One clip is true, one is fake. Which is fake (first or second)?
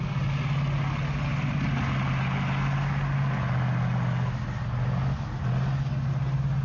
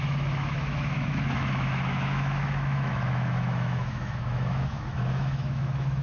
second